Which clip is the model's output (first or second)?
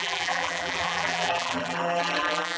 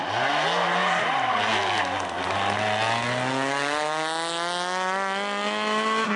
first